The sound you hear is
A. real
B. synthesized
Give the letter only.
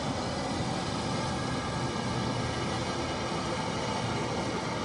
A